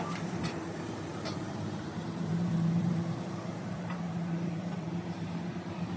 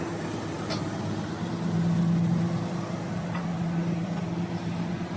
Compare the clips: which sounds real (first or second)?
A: second